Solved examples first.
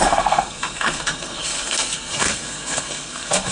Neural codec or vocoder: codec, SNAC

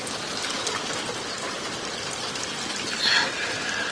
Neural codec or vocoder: none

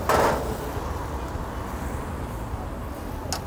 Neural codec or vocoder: none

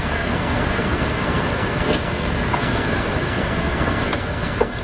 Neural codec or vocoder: codec, SNAC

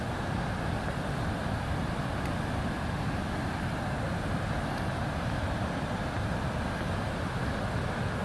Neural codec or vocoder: none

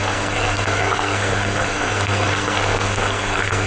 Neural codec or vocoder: codec, SNAC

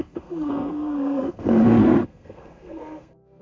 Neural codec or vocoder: codec, SNAC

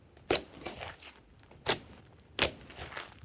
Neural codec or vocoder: none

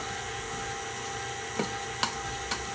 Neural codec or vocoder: none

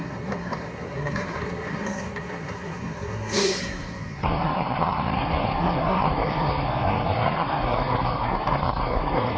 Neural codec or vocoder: codec, SNAC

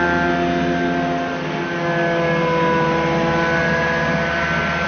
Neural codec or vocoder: none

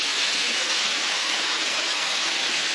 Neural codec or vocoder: codec, SNAC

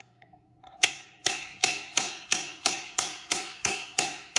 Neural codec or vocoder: codec, SNAC